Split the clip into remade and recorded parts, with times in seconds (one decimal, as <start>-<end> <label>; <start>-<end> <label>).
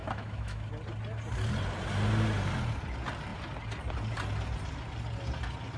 0.0-0.7 remade; 0.7-5.8 recorded